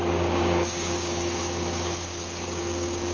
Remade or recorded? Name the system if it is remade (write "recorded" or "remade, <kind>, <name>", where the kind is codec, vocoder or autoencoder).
remade, codec, DAC